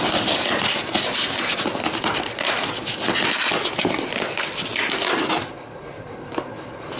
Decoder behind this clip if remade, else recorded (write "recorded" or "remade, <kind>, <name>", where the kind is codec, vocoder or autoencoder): recorded